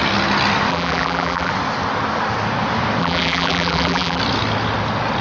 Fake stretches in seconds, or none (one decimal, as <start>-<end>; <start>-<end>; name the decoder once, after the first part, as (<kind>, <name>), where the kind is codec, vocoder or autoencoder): 0.7-1.5 (vocoder, BigVGAN v2); 3.0-4.2